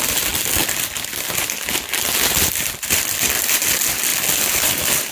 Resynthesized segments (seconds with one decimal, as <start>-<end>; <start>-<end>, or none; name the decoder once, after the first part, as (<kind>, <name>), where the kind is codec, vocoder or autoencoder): none